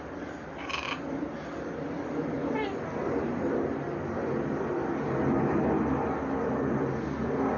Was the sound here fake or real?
real